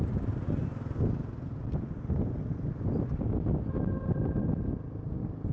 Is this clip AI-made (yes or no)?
no